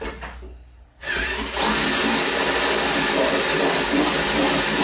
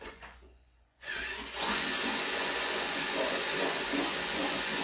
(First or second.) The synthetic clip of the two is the second